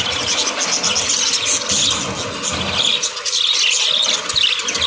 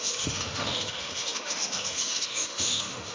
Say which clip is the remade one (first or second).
second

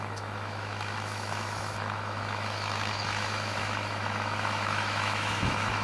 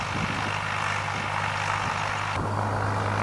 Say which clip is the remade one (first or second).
first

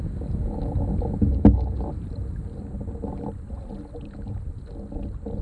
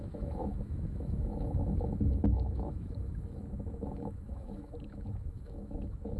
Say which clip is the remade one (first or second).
second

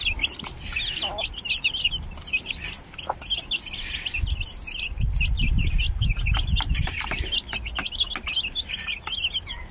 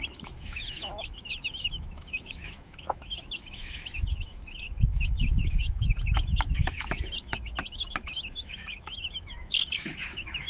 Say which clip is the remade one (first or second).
second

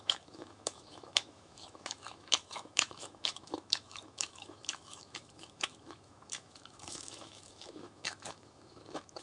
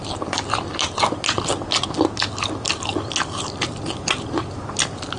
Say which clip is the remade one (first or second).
first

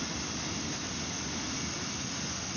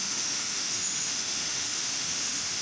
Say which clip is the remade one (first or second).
second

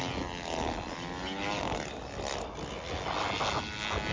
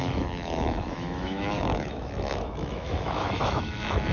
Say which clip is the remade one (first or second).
second